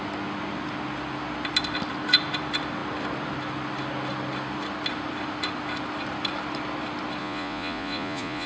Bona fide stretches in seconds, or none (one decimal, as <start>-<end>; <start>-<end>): 0.0-7.2